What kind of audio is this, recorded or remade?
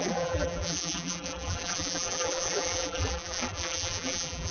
remade